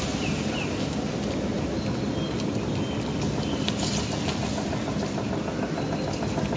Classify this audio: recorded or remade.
recorded